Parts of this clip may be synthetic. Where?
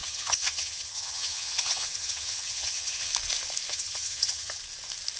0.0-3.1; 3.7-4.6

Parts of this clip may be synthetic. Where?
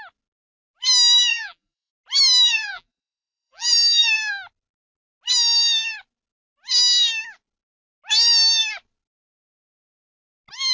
1.3-1.9; 2.5-4.3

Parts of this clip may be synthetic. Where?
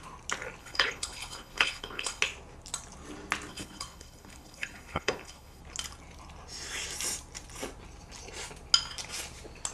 0.6-2.2; 3.5-5.6